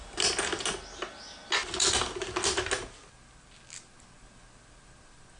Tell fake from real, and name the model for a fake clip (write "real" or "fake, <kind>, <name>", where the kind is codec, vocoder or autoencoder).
real